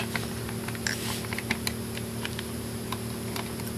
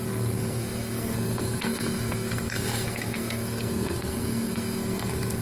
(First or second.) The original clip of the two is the first